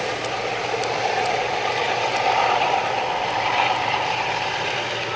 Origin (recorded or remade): recorded